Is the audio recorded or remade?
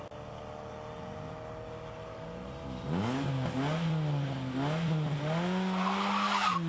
recorded